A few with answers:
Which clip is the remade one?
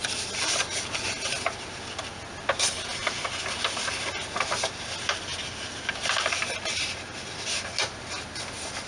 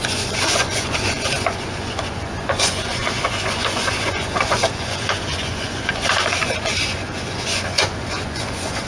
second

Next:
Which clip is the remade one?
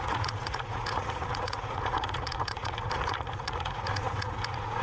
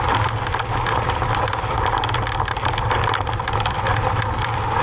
first